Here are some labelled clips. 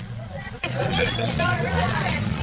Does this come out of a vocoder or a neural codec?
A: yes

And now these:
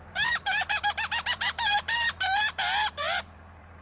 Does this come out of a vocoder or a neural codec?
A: yes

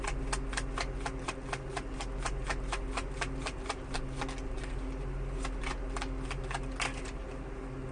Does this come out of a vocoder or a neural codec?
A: no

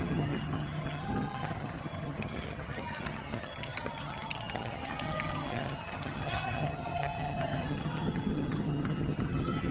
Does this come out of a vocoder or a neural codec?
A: yes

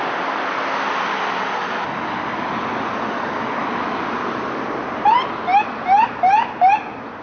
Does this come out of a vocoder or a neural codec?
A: no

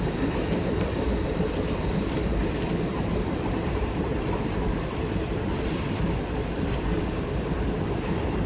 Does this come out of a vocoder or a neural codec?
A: yes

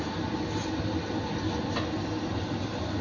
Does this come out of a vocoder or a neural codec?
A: no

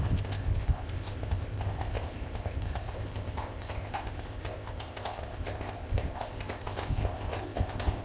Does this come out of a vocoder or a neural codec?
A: yes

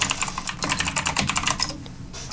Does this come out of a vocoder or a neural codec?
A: no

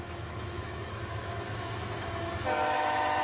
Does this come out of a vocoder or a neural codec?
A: yes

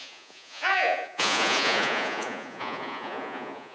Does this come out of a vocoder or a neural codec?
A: yes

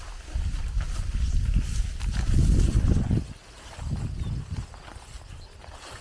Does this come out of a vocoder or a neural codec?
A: no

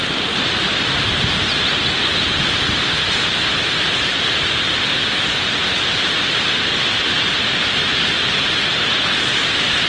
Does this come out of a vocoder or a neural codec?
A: no